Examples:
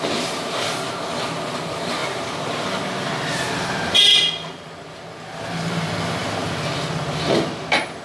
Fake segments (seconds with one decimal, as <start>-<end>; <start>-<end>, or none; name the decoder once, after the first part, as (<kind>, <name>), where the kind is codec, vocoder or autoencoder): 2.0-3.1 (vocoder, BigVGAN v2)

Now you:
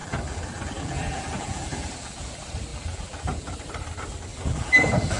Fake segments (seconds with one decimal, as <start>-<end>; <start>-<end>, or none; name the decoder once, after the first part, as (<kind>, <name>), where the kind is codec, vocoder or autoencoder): 0.0-2.3 (vocoder, BigVGAN v2); 2.7-3.5; 4.3-5.2

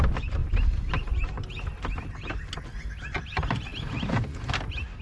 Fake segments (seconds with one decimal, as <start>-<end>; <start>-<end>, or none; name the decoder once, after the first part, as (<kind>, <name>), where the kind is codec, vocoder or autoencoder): 0.4-2.5 (vocoder, BigVGAN v2)

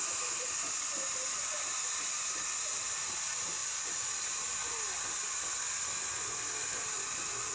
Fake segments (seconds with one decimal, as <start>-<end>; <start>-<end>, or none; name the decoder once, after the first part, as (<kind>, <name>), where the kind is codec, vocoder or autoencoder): none

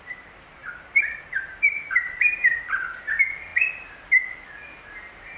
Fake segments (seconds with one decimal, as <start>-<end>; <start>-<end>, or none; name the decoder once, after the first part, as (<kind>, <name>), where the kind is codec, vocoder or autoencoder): 0.6-3.0 (vocoder, BigVGAN v2)